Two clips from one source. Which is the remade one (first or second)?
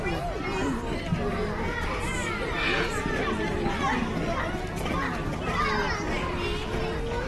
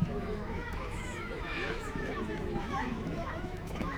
second